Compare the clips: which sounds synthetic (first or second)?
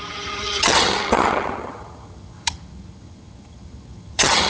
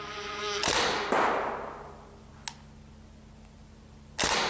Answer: first